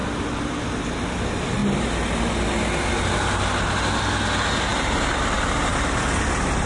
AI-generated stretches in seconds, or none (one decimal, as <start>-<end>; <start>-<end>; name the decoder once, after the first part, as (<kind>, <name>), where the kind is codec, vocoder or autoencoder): 4.7-5.4 (vocoder, BigVGAN v2)